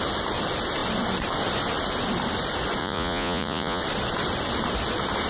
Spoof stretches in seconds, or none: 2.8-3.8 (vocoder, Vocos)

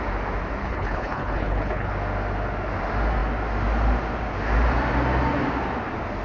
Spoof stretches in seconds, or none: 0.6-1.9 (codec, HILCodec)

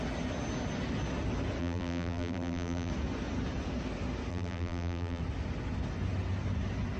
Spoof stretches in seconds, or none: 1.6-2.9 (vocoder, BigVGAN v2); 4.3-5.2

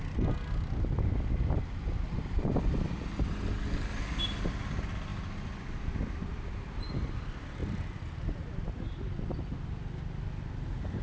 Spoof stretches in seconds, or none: none

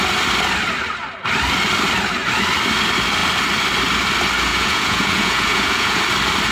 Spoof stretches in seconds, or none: 4.5-6.0 (vocoder, Vocos)

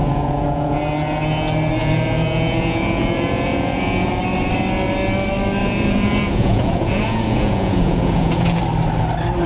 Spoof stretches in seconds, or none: 0.0-0.8 (vocoder, Vocos); 1.8-4.1; 5.6-8.6